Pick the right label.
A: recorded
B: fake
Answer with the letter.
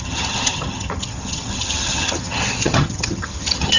B